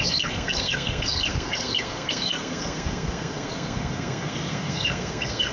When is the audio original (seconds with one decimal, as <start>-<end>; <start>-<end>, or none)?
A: none